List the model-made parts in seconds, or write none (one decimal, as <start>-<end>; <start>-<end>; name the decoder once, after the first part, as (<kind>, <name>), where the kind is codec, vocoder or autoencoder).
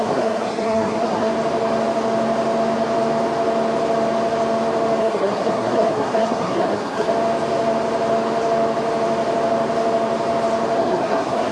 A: 0.0-1.3 (codec, SNAC); 5.0-7.1; 10.8-11.5